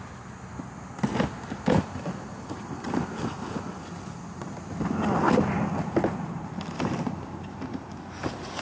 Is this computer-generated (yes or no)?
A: no